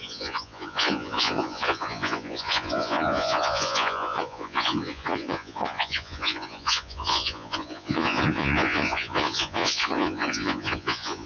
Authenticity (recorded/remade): remade